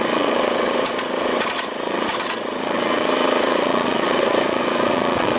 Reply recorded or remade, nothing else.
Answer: remade